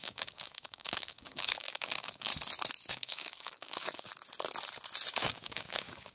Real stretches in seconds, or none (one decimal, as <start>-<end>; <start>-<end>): 2.3-2.9; 4.1-5.1